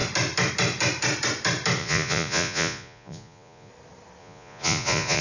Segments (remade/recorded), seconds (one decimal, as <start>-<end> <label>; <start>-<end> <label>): 0.0-1.8 recorded; 1.8-3.7 remade; 3.7-4.2 recorded; 4.2-5.2 remade